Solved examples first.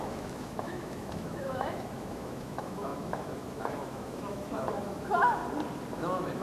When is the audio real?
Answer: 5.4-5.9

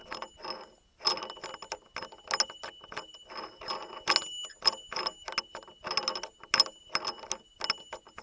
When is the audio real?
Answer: 0.0-8.2

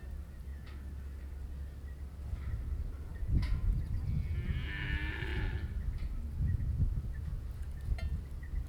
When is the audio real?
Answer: 0.0-8.7